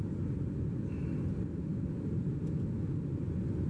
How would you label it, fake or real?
real